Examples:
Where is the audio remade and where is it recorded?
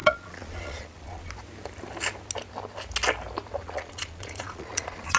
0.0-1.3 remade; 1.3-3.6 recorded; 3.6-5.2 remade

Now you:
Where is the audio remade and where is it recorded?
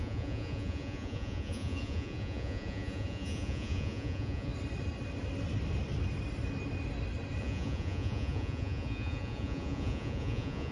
0.0-4.5 remade; 4.5-7.4 recorded; 7.4-10.7 remade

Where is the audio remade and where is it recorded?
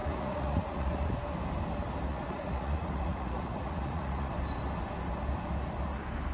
0.0-1.1 remade; 1.1-2.1 recorded; 2.1-4.3 remade; 4.3-6.3 recorded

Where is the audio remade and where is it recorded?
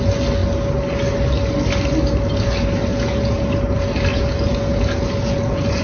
0.0-2.9 recorded; 2.9-3.6 remade; 3.6-4.1 recorded; 4.1-5.8 remade